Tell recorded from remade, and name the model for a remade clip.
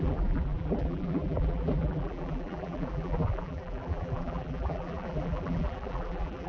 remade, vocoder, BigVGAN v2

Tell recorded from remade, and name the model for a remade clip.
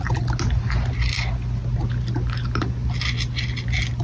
recorded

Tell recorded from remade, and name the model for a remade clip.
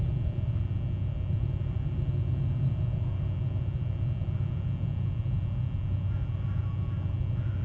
recorded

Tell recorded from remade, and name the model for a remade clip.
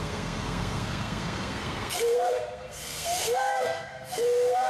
remade, codec, SNAC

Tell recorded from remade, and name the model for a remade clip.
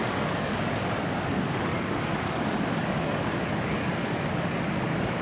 remade, codec, DAC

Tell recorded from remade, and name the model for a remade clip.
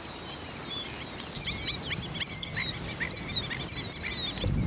recorded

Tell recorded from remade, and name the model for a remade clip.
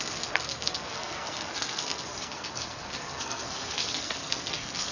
remade, codec, SNAC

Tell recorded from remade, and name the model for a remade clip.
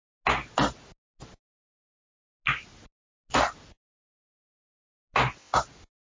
recorded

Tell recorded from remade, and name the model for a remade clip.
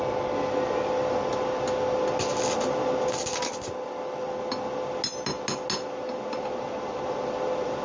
recorded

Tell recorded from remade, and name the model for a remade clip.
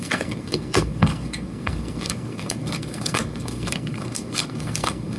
remade, codec, SNAC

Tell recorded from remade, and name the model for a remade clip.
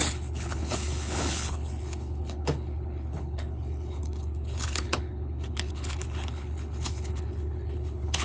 remade, codec, HILCodec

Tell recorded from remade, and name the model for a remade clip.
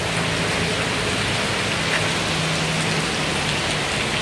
recorded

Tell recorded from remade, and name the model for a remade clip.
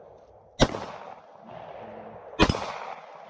recorded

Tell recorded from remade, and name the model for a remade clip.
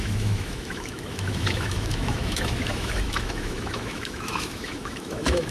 remade, autoencoder, DAC-VAE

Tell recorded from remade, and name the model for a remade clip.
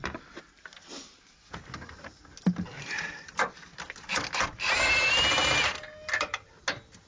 recorded